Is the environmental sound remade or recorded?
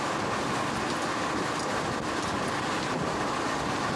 recorded